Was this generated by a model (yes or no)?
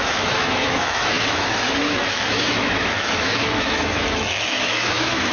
yes